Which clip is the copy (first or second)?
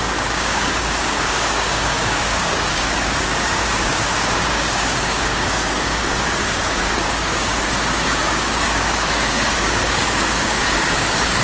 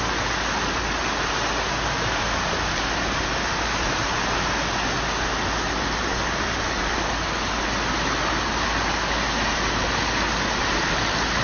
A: first